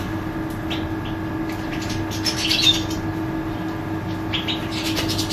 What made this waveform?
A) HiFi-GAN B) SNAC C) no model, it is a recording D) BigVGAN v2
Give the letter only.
C